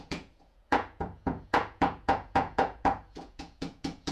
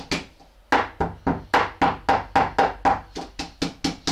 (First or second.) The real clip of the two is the second